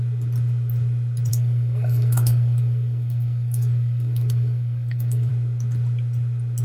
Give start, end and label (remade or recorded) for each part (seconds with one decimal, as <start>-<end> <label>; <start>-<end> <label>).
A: 0.0-1.3 recorded; 1.3-5.3 remade; 5.3-6.6 recorded